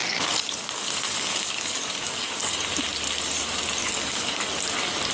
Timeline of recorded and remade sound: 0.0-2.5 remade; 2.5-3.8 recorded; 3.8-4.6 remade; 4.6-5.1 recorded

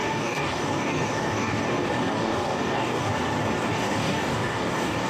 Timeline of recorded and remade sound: 0.0-3.1 remade; 3.1-3.7 recorded; 3.7-5.1 remade